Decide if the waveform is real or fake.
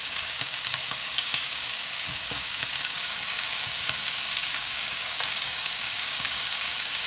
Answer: fake